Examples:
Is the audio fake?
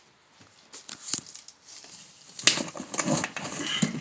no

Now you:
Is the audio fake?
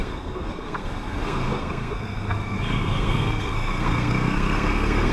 yes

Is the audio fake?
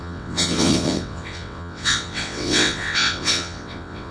yes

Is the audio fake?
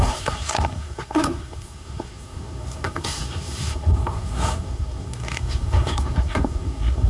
yes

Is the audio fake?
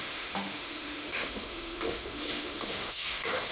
yes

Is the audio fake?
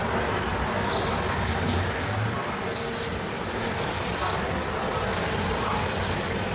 no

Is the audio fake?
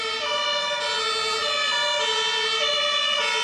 no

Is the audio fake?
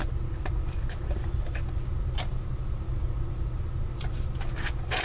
no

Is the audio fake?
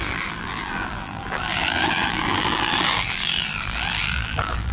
yes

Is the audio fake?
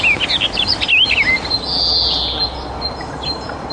no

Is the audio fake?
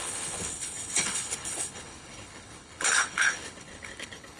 yes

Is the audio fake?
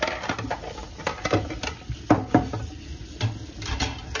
no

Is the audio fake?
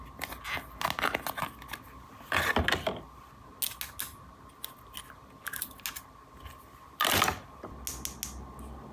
no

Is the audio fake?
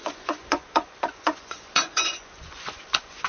yes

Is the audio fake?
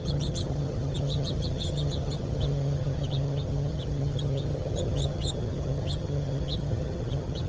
yes